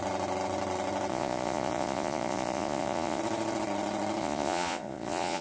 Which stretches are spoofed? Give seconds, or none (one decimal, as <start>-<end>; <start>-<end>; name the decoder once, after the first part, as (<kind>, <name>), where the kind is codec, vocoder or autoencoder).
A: 1.1-3.2 (vocoder, Vocos); 4.2-5.4